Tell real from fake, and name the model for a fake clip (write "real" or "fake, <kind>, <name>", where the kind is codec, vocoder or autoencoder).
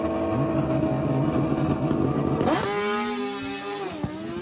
real